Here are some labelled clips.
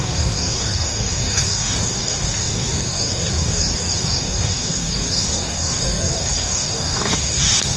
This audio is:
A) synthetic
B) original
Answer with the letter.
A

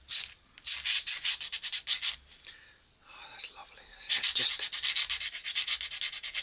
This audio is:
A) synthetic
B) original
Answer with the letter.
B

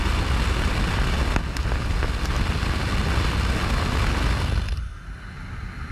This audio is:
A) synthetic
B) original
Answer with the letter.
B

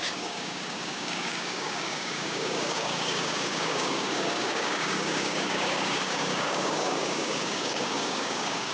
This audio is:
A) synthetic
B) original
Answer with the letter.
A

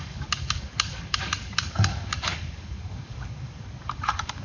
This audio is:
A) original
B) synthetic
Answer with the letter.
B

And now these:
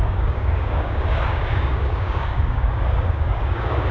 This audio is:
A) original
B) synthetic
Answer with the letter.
B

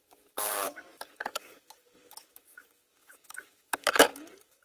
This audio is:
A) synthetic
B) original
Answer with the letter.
A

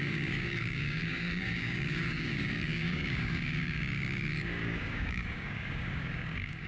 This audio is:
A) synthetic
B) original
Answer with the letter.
A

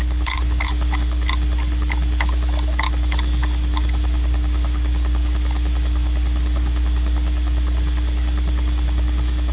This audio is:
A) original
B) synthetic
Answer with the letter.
B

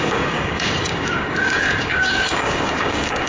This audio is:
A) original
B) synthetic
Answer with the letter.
B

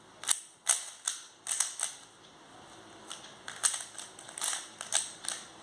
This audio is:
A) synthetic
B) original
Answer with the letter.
B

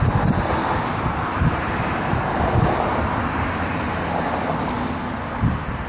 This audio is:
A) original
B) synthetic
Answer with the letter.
A